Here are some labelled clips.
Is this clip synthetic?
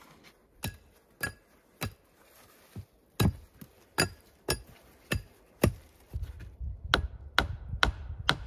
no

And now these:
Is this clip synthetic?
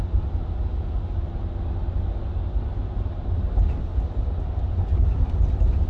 no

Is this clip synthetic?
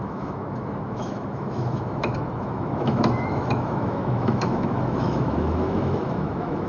yes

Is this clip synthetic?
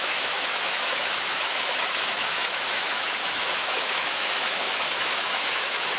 yes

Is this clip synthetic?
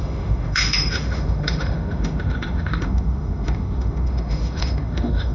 yes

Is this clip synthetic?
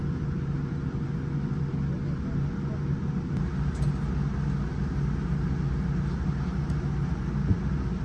no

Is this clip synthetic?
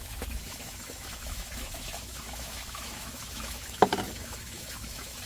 yes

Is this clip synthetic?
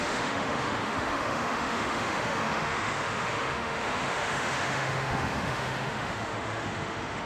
yes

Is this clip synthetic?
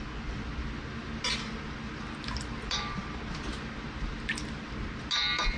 no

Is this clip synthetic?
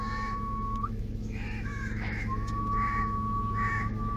yes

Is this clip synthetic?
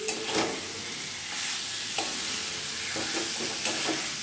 no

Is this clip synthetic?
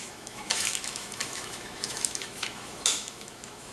yes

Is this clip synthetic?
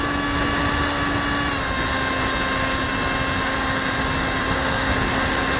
no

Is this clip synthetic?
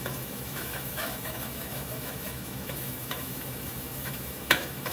yes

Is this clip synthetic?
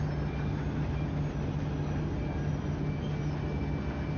no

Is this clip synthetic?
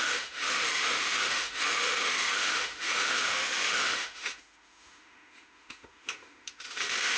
yes